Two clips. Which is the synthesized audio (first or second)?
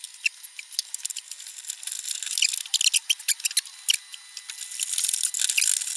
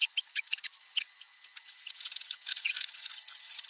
second